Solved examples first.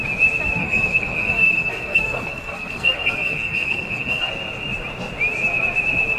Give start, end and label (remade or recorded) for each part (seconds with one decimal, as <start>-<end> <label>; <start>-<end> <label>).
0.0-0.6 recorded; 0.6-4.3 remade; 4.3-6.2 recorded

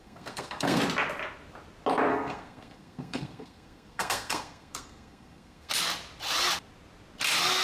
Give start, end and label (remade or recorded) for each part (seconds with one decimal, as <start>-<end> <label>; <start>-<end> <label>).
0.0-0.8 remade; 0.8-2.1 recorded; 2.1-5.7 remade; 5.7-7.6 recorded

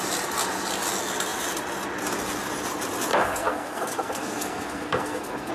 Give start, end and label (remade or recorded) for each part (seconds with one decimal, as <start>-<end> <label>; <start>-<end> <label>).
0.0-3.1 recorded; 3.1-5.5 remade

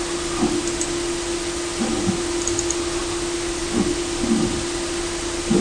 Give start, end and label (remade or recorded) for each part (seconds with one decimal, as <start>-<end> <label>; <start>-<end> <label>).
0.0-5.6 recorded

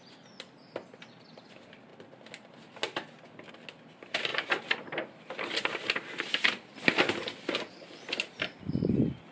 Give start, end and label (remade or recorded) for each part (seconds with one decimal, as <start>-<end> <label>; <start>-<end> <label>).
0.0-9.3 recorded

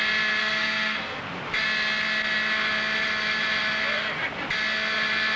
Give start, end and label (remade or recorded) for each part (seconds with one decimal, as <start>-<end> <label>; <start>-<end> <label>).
0.0-0.4 recorded; 0.4-1.2 remade; 1.2-5.4 recorded

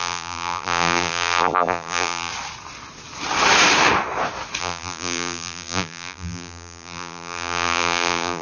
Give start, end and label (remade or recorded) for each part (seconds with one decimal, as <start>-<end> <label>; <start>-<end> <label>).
0.0-2.3 remade; 2.3-4.6 recorded; 4.6-8.4 remade